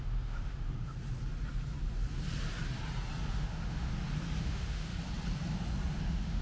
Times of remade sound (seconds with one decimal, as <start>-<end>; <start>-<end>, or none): 0.0-0.9; 3.3-3.9; 4.4-4.9; 6.0-6.4